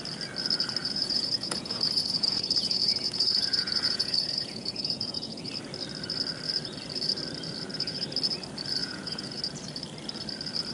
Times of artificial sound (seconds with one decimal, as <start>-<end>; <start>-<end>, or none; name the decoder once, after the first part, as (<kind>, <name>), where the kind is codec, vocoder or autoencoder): 0.8-5.5 (vocoder, Vocos); 8.8-9.4